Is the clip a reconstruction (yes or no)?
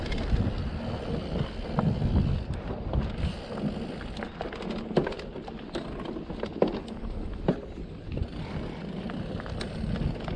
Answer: no